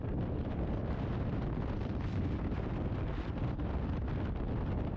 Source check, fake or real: real